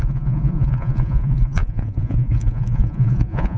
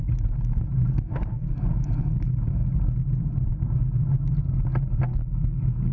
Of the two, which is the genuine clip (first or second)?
second